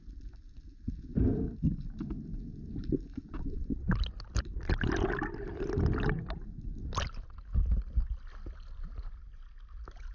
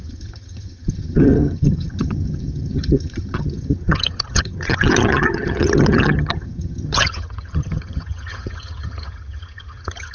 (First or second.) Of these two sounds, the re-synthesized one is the second